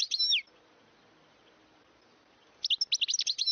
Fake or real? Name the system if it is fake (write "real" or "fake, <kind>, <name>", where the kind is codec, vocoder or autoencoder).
real